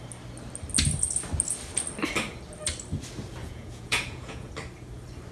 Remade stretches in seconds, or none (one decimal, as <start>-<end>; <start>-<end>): 3.4-4.5